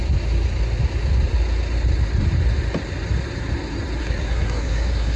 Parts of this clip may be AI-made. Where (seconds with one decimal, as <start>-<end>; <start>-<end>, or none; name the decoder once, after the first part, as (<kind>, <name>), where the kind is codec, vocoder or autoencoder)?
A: 4.0-5.2 (codec, SNAC)